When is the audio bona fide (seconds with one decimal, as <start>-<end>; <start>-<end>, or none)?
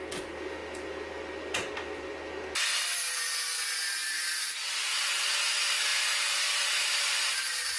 0.0-4.0; 5.2-7.8